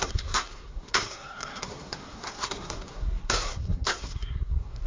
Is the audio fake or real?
fake